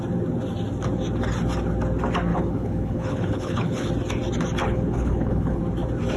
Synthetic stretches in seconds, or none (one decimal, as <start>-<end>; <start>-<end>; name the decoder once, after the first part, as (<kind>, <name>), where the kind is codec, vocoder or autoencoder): 2.3-3.9 (codec, HILCodec); 4.6-5.6